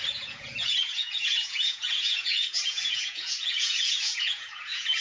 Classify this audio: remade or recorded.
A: remade